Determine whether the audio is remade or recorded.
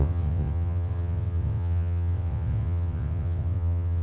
remade